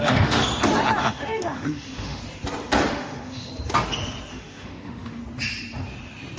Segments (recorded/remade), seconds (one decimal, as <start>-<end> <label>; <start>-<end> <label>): 0.0-0.4 remade; 0.4-1.0 recorded; 1.0-2.2 remade; 2.2-2.9 recorded; 2.9-3.5 remade; 3.5-4.3 recorded; 4.3-5.2 remade; 5.2-6.4 recorded